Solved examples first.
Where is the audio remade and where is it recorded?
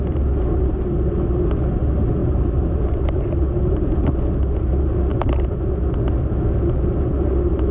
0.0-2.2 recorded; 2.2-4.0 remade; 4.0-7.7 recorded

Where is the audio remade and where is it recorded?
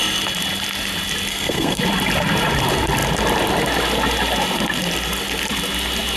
0.0-1.3 recorded; 1.3-1.8 remade; 1.8-6.2 recorded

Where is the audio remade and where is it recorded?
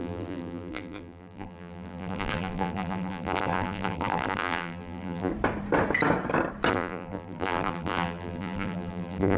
0.0-5.3 remade; 5.3-6.7 recorded; 6.7-9.4 remade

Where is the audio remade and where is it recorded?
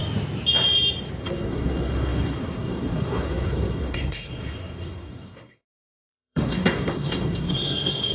0.0-1.2 recorded; 1.2-8.1 remade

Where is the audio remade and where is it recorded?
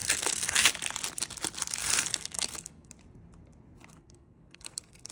0.0-0.7 remade; 0.7-1.8 recorded; 1.8-2.9 remade; 2.9-3.9 recorded; 3.9-5.1 remade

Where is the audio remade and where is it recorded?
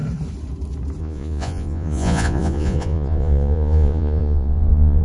0.0-1.0 recorded; 1.0-5.0 remade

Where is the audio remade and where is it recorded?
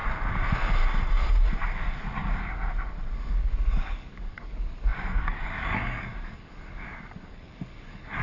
0.0-3.3 recorded; 3.3-8.2 remade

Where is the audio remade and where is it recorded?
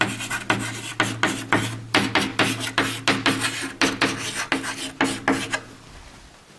0.0-6.6 recorded